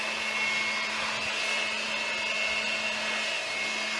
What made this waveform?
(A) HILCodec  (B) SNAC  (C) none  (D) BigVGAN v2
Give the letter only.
C